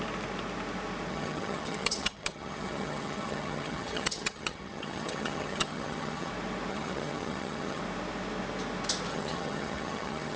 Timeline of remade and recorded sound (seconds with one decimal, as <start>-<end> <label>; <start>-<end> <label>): 0.0-1.1 recorded; 1.1-6.3 remade; 6.3-6.7 recorded; 6.7-7.8 remade; 7.8-9.1 recorded; 9.1-10.4 remade